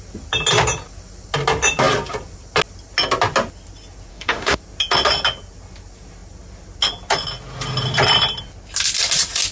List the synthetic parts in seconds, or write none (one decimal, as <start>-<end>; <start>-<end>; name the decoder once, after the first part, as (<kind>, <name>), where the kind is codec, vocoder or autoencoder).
4.1-4.6 (autoencoder, DAC-VAE)